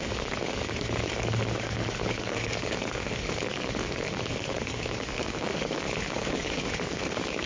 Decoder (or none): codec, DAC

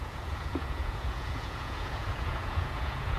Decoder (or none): vocoder, Vocos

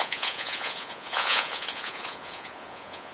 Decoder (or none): vocoder, Vocos